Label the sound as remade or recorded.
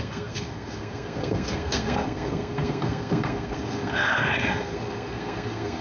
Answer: remade